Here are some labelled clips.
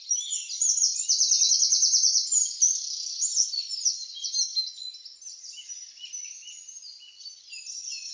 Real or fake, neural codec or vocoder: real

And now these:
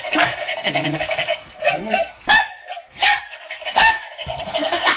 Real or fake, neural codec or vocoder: fake, codec, SNAC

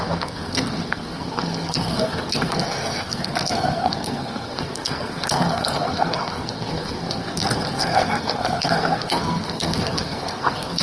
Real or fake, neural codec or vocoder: fake, codec, SNAC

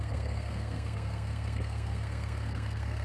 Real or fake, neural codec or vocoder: fake, codec, SNAC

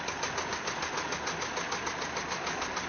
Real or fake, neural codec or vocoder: real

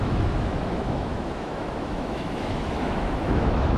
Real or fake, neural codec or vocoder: fake, autoencoder, DAC-VAE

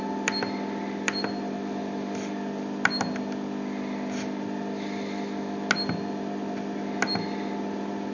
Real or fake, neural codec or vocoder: real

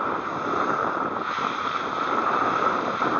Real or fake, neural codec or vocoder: real